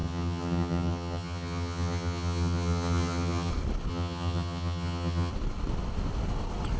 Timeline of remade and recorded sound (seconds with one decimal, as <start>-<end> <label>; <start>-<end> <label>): 0.0-3.5 remade; 3.5-3.9 recorded; 3.9-5.3 remade; 5.3-6.8 recorded